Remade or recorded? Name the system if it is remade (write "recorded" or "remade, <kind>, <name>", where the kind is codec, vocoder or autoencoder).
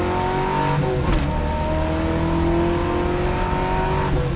recorded